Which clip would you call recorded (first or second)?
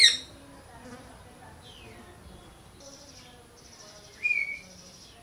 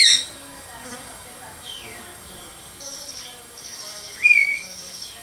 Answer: first